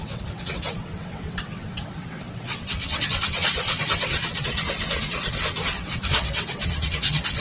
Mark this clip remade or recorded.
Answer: remade